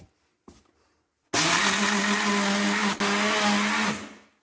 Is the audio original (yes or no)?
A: yes